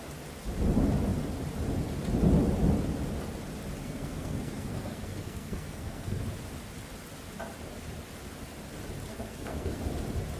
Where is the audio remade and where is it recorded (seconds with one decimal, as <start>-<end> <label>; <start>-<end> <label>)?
0.0-3.8 recorded; 3.8-6.2 remade; 6.2-9.1 recorded; 9.1-9.8 remade; 9.8-10.4 recorded